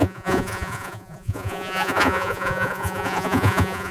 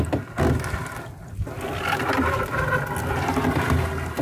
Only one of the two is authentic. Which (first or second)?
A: second